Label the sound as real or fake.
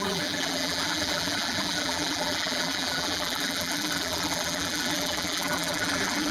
fake